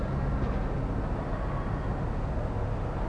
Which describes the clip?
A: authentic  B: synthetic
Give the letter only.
A